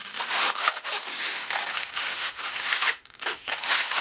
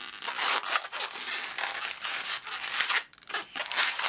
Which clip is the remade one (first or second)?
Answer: first